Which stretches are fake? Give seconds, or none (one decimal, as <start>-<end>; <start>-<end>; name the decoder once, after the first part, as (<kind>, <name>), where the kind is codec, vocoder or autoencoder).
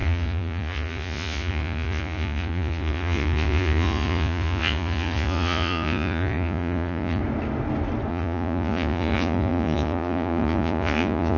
0.0-7.2 (vocoder, Vocos); 8.1-11.4